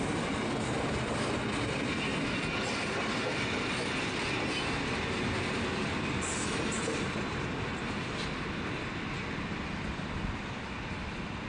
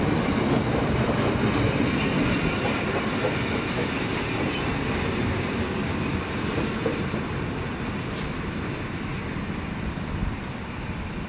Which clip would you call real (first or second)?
first